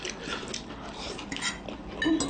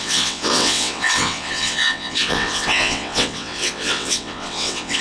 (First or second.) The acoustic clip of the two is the first